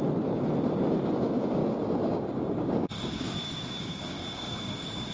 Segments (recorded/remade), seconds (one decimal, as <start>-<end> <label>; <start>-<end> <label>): 0.0-1.6 recorded; 1.6-5.1 remade